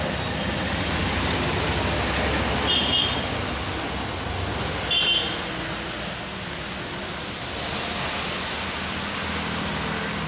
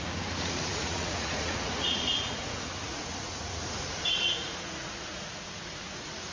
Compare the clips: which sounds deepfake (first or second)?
second